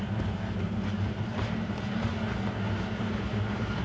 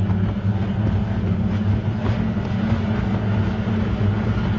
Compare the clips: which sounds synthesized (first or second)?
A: first